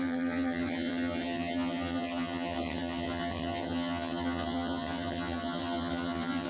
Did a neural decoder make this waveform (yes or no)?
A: yes